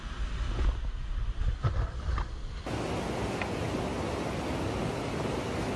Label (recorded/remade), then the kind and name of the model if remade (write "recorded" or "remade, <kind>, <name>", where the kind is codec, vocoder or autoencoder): recorded